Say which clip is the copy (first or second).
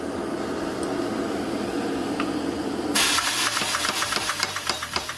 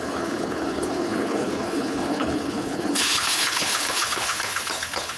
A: second